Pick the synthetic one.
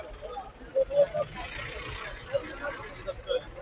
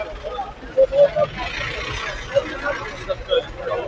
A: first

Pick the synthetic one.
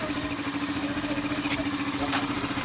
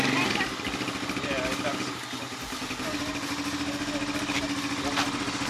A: first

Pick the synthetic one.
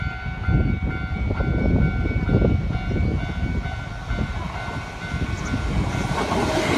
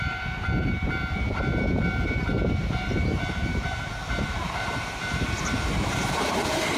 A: second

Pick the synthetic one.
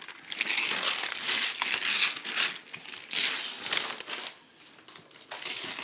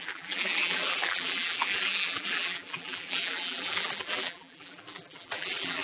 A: second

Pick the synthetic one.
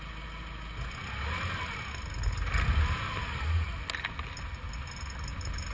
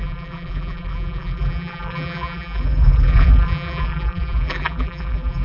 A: second